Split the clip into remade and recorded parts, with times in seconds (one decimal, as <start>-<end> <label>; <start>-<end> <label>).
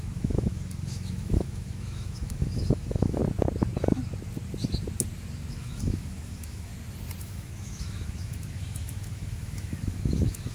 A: 0.0-3.2 remade; 3.2-5.5 recorded; 5.5-6.7 remade; 6.7-7.2 recorded; 7.2-10.5 remade